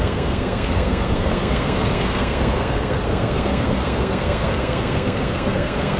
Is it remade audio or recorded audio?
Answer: remade